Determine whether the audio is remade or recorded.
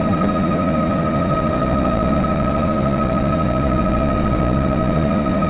remade